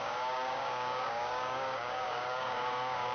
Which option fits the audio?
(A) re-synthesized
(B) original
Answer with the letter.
A